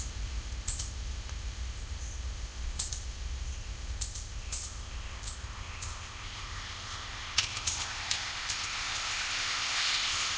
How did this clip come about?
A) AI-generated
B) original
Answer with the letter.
A